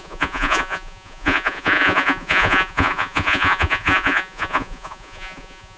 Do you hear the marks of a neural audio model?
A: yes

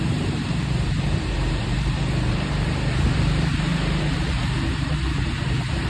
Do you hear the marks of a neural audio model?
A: yes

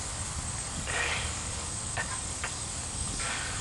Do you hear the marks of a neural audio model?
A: yes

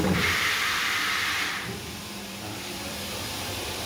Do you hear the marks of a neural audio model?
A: yes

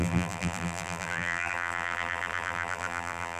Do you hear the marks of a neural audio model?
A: yes